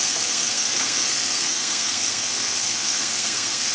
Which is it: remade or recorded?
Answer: remade